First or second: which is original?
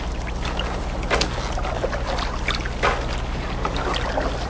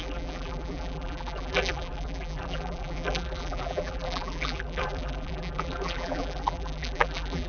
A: first